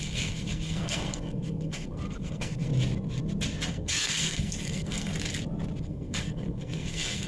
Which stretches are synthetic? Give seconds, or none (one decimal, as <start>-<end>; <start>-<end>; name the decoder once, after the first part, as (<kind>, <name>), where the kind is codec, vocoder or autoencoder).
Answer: 0.0-2.7 (codec, SNAC); 3.7-5.1; 5.8-7.3